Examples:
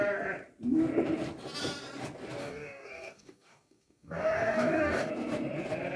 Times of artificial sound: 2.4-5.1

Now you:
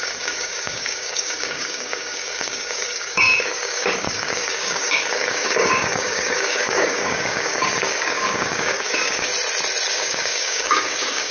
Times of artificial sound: 0.0-9.3; 9.9-11.3

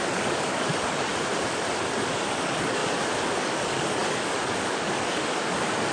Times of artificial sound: 0.0-1.1; 2.0-2.8; 3.4-5.9

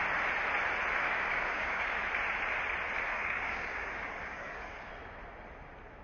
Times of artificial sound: 1.0-2.0; 3.1-4.9

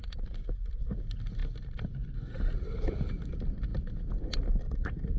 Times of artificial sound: none

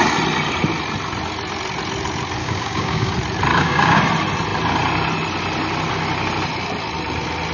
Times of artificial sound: 2.4-3.1; 3.5-4.0